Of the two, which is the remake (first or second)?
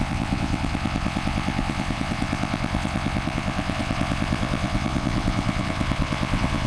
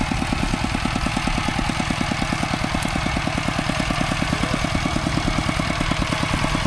first